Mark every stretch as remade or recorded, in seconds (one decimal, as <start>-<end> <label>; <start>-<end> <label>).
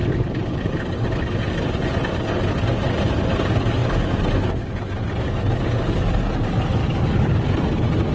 0.0-2.2 remade; 2.2-6.8 recorded; 6.8-7.5 remade; 7.5-8.1 recorded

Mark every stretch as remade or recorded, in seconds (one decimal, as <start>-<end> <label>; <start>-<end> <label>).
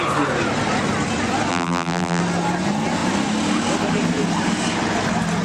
0.0-1.5 recorded; 1.5-2.2 remade; 2.2-5.4 recorded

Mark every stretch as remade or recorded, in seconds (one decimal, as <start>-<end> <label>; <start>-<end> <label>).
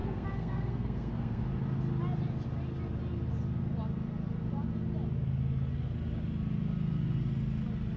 0.0-1.4 remade; 1.4-8.0 recorded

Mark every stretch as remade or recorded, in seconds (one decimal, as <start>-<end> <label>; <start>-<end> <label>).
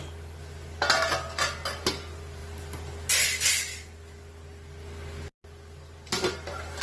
0.0-6.8 recorded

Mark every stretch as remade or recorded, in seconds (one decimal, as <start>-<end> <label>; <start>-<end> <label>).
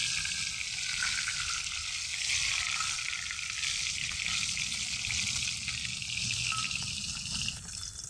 0.0-8.1 recorded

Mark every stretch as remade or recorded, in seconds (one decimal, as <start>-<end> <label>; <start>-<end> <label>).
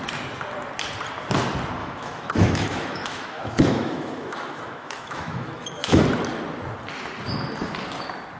0.0-1.8 recorded; 1.8-6.0 remade; 6.0-8.4 recorded